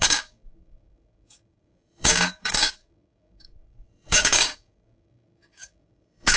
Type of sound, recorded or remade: remade